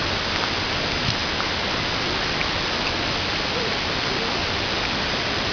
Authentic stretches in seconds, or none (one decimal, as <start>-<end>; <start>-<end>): 0.0-5.5